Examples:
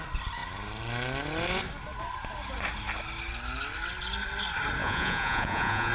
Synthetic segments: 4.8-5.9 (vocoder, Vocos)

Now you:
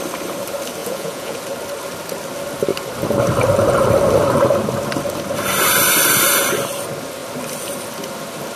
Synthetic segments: 0.8-1.4 (vocoder, Vocos)

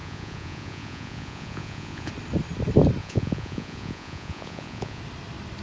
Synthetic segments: 0.0-2.1 (vocoder, Vocos); 3.0-5.0

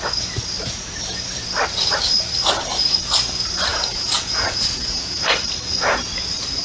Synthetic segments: 3.7-5.2 (vocoder, Vocos)

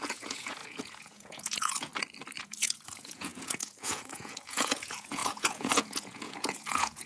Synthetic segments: 0.0-1.9 (vocoder, Vocos); 2.4-7.1

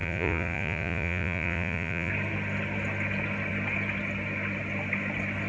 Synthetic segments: 0.0-2.1 (vocoder, Vocos)